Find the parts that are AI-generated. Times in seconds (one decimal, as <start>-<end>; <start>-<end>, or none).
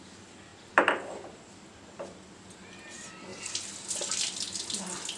0.5-2.5; 3.3-4.4